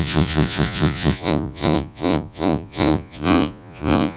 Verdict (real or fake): fake